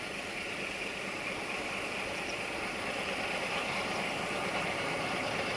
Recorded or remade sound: recorded